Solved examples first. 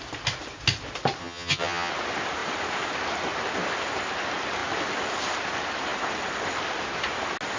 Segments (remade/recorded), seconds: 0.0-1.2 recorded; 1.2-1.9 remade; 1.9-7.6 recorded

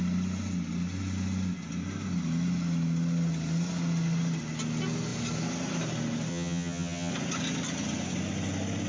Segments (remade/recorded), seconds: 0.0-6.3 recorded; 6.3-7.1 remade; 7.1-8.9 recorded

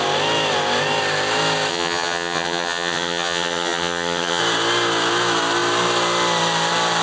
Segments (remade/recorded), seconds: 0.0-1.7 recorded; 1.7-4.4 remade; 4.4-7.0 recorded

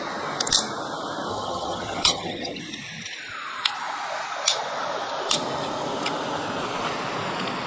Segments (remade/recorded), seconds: 0.0-1.3 recorded; 1.3-2.6 remade; 2.6-7.7 recorded